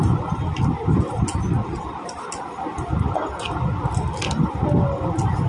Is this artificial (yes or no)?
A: no